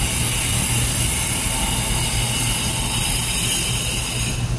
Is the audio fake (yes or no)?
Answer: no